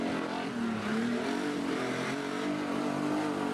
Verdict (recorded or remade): recorded